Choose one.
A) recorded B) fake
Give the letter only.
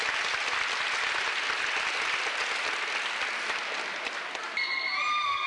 A